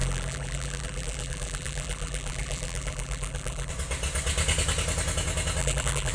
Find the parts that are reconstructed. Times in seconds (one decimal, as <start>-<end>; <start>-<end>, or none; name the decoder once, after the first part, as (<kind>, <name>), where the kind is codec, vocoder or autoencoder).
0.0-3.7 (vocoder, BigVGAN v2); 5.6-6.1